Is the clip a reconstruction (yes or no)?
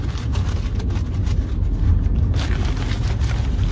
no